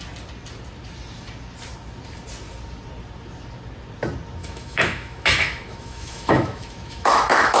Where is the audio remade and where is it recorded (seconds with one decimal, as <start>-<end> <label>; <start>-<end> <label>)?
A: 0.0-4.4 recorded; 4.4-7.6 remade